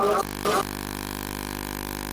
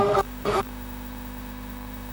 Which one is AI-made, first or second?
second